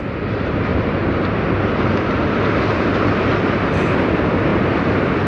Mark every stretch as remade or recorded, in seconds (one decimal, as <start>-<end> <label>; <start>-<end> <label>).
0.0-0.7 recorded; 0.7-1.4 remade; 1.4-2.7 recorded; 2.7-3.3 remade; 3.3-5.3 recorded